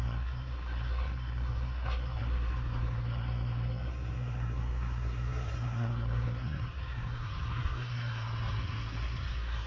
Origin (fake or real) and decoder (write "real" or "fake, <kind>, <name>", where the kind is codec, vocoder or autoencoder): fake, codec, SNAC